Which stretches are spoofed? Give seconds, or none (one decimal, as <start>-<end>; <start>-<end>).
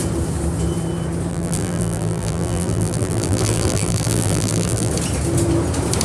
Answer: 1.3-4.9